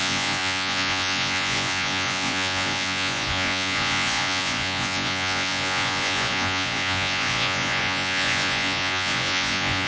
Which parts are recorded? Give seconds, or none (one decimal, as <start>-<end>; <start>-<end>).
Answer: none